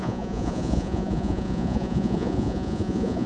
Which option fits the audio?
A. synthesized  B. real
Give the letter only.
A